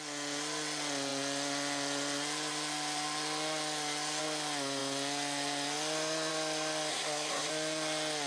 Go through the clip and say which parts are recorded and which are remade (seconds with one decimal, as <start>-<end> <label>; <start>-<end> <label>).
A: 0.0-6.9 recorded; 6.9-7.5 remade; 7.5-8.3 recorded